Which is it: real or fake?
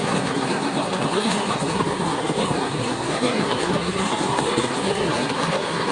fake